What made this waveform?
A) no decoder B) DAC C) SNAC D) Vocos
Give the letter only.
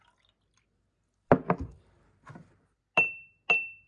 A